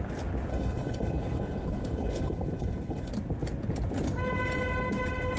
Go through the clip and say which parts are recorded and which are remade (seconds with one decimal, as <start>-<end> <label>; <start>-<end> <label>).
0.0-0.5 recorded; 0.5-3.1 remade; 3.1-5.4 recorded